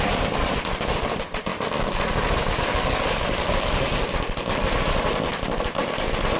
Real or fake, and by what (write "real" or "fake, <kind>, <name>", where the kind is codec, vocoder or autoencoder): real